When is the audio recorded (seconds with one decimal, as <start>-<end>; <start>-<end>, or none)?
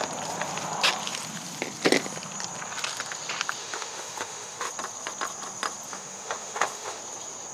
0.0-3.6; 4.7-5.9; 7.0-7.5